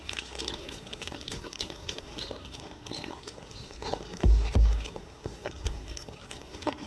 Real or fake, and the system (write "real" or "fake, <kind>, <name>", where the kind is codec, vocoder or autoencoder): fake, codec, SNAC